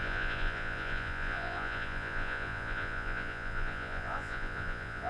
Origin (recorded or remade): remade